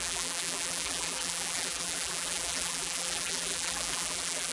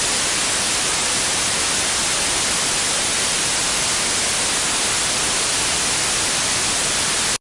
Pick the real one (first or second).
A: second